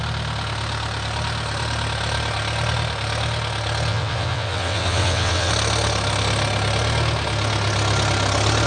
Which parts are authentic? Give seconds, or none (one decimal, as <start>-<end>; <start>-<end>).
0.0-3.9; 5.5-8.7

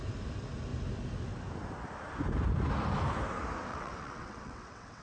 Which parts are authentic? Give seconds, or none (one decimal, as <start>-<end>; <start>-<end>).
0.0-3.7

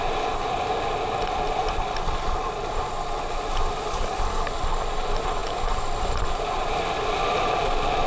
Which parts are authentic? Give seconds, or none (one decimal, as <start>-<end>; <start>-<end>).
0.0-8.1

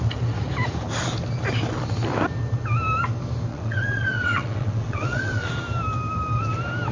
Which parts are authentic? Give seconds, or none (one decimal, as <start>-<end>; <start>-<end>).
0.0-3.5; 5.5-6.9